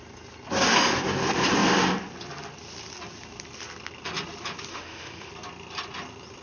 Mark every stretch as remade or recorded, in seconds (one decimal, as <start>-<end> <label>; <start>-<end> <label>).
0.0-4.7 recorded; 4.7-5.3 remade; 5.3-6.4 recorded